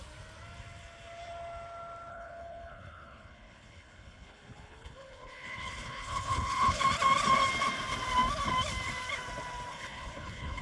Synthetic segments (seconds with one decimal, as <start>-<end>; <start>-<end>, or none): 2.1-6.8; 9.7-10.6